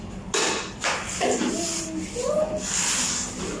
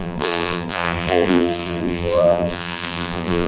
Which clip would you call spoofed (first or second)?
second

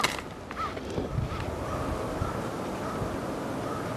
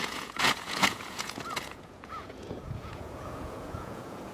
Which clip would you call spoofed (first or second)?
second